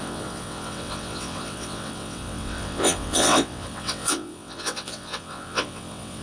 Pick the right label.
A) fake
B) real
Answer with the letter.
A